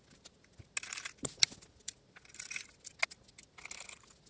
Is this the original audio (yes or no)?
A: yes